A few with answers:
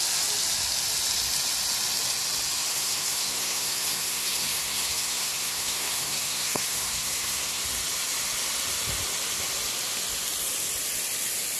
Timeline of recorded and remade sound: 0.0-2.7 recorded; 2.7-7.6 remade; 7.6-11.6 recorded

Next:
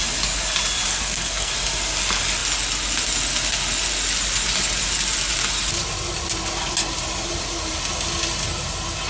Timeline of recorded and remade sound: 0.0-0.9 recorded; 0.9-1.5 remade; 1.5-9.1 recorded

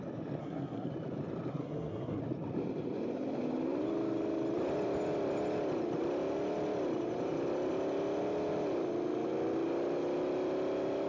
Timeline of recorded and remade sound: 0.0-0.4 recorded; 0.4-0.9 remade; 0.9-1.5 recorded; 1.5-2.2 remade; 2.2-11.1 recorded